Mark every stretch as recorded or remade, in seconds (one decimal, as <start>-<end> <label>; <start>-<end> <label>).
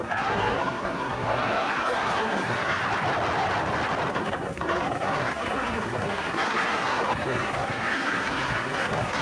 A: 0.0-2.8 remade; 2.8-4.1 recorded; 4.1-9.2 remade